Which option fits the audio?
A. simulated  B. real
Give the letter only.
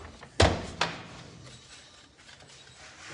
B